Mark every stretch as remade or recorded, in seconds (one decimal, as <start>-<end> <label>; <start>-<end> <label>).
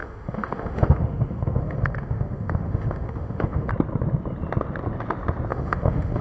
0.0-3.7 remade; 3.7-5.5 recorded; 5.5-6.2 remade